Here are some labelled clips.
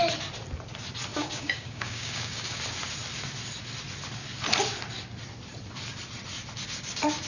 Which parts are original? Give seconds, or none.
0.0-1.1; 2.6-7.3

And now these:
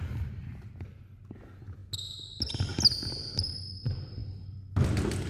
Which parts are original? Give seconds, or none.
0.0-5.3

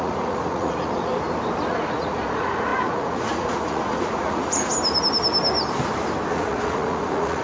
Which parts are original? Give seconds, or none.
1.1-1.7; 4.7-6.3

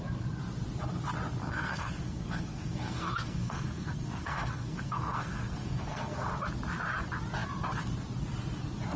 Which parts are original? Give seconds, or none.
0.0-1.4; 6.3-9.0